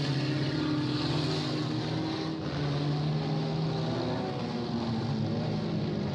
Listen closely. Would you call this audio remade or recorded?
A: recorded